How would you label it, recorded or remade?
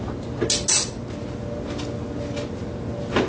recorded